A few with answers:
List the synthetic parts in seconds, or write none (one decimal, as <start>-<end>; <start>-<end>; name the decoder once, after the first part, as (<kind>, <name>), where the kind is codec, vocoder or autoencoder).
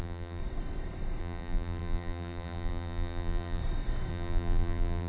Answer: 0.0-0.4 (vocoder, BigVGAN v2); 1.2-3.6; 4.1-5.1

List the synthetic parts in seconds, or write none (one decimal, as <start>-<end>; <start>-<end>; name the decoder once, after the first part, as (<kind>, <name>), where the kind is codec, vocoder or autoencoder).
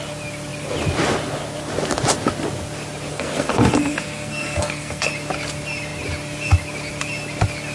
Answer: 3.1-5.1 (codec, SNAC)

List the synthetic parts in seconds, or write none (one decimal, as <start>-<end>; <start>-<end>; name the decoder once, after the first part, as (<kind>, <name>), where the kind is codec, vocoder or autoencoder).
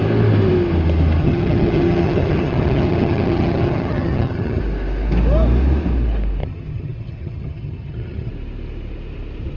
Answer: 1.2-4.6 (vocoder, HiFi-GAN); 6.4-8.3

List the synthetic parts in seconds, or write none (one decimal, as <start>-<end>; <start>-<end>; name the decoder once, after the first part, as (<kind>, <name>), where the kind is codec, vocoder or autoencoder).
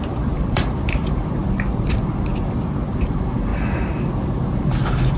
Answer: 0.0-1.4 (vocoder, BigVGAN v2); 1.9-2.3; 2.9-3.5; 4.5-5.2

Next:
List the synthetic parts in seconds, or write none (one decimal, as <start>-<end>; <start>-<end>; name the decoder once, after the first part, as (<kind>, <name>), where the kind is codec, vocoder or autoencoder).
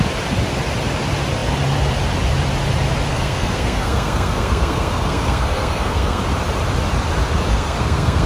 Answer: 3.1-6.2 (codec, SNAC); 7.5-8.3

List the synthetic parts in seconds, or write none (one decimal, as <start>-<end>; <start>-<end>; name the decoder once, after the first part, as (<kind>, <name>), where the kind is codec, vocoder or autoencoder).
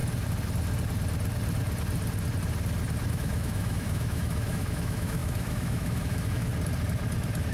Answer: 3.1-6.5 (autoencoder, DAC-VAE)